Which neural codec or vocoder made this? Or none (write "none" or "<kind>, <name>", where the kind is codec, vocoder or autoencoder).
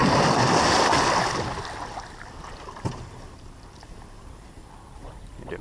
none